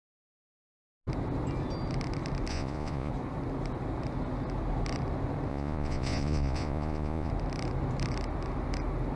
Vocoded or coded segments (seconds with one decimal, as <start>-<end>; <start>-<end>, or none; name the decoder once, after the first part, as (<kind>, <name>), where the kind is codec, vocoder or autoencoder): 2.5-3.1 (vocoder, Vocos); 5.5-7.3